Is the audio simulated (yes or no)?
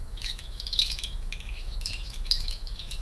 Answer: yes